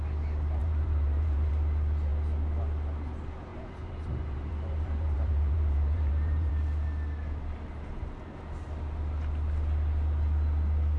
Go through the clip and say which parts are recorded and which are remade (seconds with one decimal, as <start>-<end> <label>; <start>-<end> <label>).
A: 0.0-0.6 recorded; 0.6-1.5 remade; 1.5-3.5 recorded; 3.5-6.5 remade; 6.5-11.0 recorded